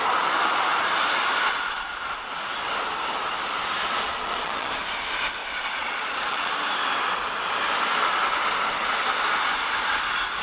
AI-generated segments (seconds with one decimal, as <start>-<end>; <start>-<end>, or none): 4.1-4.7; 5.4-6.5